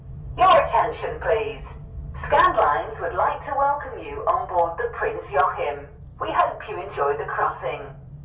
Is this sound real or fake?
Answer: real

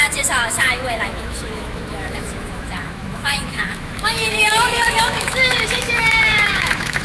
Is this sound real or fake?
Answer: fake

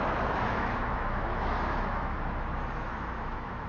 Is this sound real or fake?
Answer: fake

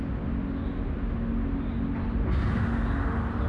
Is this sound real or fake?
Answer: real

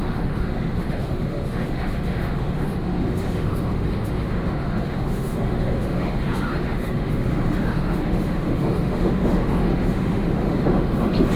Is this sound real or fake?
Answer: fake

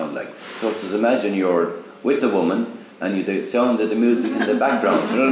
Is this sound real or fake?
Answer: real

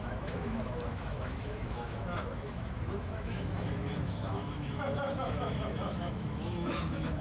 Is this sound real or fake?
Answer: fake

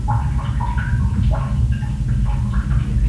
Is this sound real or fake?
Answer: real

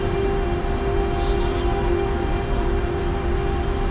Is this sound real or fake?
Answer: real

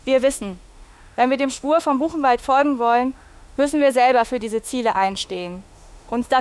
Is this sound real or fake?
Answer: fake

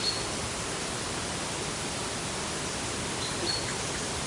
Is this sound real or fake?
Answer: real